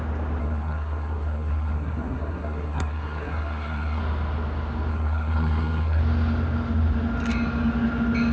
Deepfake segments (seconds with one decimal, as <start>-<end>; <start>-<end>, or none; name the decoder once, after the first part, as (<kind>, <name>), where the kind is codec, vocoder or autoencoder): 0.4-4.0 (codec, SNAC); 4.9-6.0